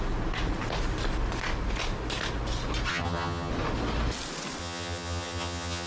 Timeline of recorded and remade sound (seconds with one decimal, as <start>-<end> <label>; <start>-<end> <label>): 0.0-2.9 recorded; 2.9-3.5 remade; 3.5-4.6 recorded; 4.6-5.9 remade